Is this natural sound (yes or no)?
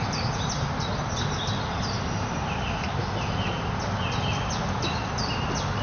yes